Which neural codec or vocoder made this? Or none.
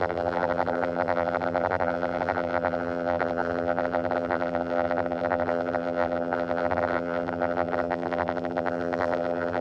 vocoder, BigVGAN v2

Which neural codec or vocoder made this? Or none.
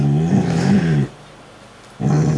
none